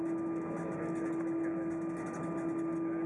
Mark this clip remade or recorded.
recorded